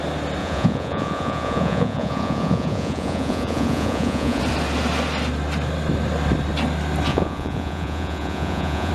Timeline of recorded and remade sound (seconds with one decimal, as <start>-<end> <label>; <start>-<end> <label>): 0.0-0.4 recorded; 0.4-4.4 remade; 4.4-7.1 recorded; 7.1-8.9 remade